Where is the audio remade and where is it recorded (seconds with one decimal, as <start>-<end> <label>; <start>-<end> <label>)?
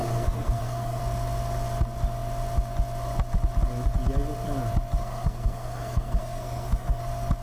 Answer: 0.0-1.0 remade; 1.0-5.0 recorded; 5.0-7.0 remade; 7.0-7.4 recorded